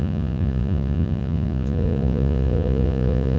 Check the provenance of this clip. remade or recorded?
remade